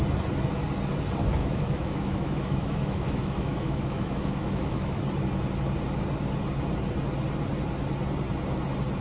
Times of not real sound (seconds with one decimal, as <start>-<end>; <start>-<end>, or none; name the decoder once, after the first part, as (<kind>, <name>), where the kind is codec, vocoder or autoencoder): 1.4-5.0 (autoencoder, DAC-VAE)